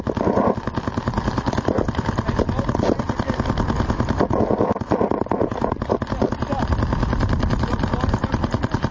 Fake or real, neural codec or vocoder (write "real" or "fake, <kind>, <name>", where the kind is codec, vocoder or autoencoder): real